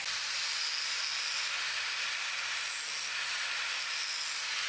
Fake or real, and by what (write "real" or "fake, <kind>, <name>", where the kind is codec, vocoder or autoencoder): real